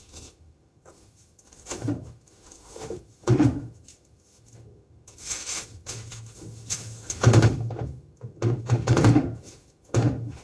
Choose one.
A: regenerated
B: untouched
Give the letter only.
A